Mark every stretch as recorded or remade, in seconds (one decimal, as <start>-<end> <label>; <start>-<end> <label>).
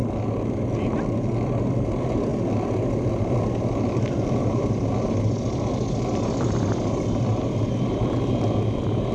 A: 0.0-9.1 recorded